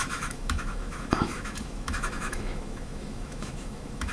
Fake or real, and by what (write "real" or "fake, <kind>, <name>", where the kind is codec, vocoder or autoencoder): fake, autoencoder, DAC-VAE